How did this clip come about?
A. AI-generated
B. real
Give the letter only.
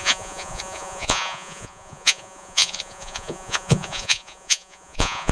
A